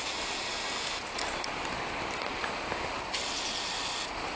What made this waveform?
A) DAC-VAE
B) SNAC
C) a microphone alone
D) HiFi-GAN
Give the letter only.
C